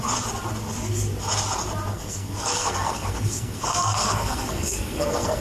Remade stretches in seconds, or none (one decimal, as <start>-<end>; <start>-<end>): 1.9-5.4